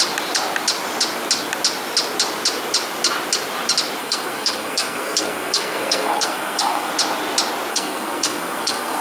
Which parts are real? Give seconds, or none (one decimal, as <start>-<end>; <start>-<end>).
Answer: 0.0-4.0; 6.9-7.7